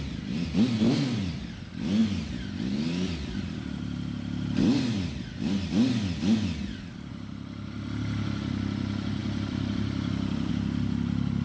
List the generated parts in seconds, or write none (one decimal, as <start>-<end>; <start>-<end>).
9.2-10.5